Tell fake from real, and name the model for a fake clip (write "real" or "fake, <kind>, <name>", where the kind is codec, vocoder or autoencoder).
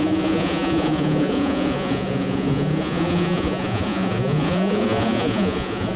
fake, vocoder, Vocos